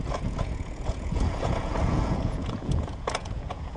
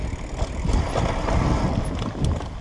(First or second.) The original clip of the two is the second